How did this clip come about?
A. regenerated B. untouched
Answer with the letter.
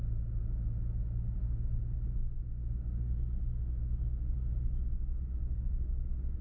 B